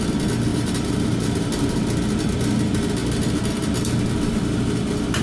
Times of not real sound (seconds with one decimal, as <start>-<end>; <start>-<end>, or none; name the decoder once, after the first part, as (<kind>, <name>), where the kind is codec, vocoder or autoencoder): 0.5-1.8 (vocoder, BigVGAN v2)